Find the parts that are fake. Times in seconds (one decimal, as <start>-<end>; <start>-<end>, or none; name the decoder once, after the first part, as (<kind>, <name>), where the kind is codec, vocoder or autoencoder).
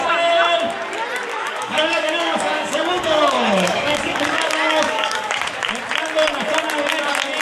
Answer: 1.3-5.7 (codec, DAC)